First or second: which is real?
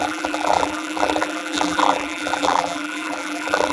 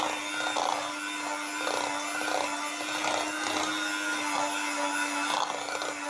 second